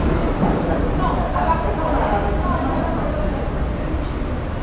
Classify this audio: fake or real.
real